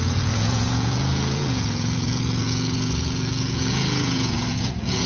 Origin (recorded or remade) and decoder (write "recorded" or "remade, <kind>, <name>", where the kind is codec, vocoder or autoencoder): remade, vocoder, Vocos